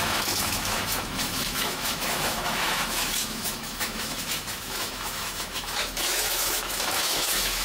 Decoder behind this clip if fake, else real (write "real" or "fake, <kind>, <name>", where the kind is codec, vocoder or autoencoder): fake, autoencoder, DAC-VAE